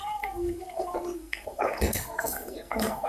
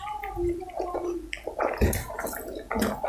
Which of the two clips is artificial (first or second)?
first